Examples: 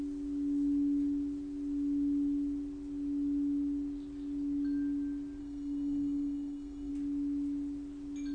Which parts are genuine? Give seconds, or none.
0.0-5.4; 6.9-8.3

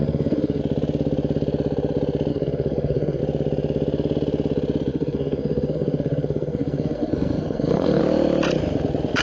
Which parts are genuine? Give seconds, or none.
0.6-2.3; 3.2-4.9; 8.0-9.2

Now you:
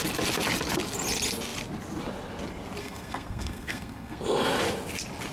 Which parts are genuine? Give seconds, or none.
0.0-2.8; 4.2-5.3

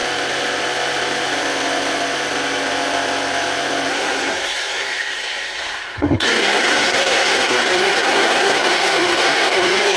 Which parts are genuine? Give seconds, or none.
0.0-3.9